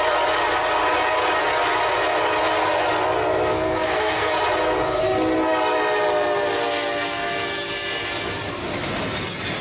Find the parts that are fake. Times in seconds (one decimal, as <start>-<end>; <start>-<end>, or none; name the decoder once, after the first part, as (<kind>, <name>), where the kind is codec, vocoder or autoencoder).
3.5-4.3 (codec, SNAC)